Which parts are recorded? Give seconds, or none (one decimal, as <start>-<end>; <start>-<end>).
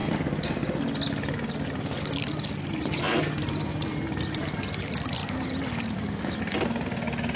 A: 0.0-7.4